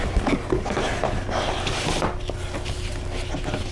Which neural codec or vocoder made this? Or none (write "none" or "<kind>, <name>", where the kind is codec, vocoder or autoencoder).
none